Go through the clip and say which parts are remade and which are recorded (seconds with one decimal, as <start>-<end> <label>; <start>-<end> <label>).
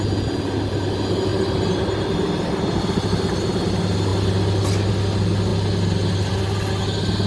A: 0.0-7.3 recorded